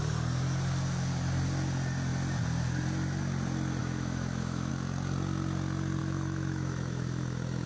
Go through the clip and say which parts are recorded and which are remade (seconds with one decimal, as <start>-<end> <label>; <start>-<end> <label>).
0.0-3.8 recorded; 3.8-4.7 remade; 4.7-6.0 recorded; 6.0-7.7 remade